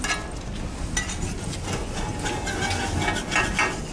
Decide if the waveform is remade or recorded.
recorded